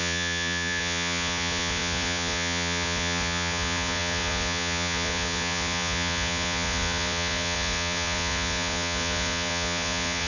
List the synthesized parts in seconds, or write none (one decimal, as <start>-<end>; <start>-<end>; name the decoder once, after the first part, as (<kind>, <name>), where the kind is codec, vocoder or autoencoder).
0.0-10.3 (vocoder, Vocos)